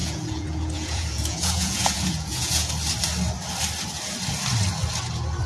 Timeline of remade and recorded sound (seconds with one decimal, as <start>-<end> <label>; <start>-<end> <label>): 0.0-2.7 remade; 2.7-5.5 recorded